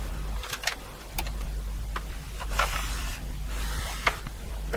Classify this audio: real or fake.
real